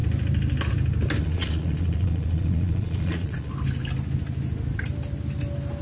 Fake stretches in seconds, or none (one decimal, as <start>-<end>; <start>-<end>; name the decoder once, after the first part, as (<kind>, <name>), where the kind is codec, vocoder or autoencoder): 1.2-3.5 (vocoder, Vocos)